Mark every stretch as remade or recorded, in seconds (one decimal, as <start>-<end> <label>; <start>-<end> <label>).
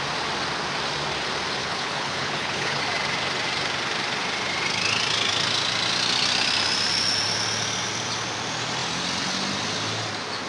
0.0-1.6 recorded; 1.6-2.8 remade; 2.8-10.5 recorded